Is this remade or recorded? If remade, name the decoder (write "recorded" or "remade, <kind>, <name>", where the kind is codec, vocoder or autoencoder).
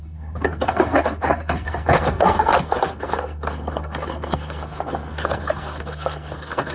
remade, codec, SNAC